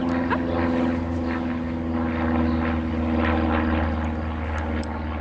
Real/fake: real